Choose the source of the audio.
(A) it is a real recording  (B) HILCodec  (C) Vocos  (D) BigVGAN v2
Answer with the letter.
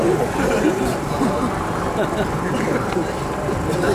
D